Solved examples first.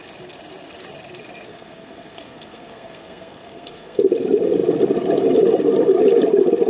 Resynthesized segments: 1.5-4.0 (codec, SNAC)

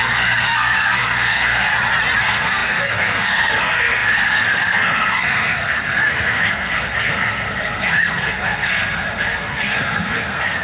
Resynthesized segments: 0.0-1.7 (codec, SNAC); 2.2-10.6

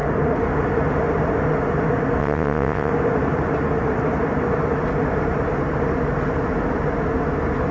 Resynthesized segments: 2.2-2.9 (vocoder, WaveNeXt)